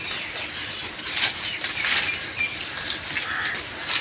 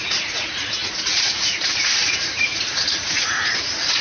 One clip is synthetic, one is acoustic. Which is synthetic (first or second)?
second